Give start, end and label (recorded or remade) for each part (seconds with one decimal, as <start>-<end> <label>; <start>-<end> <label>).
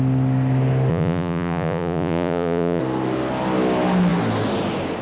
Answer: 0.0-0.9 recorded; 0.9-2.8 remade; 2.8-5.0 recorded